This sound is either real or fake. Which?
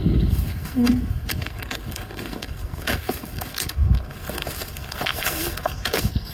fake